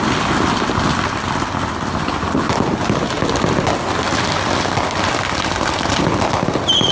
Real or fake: real